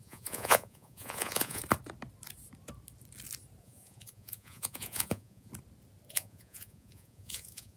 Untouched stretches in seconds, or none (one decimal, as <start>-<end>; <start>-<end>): 1.6-3.6; 5.5-6.1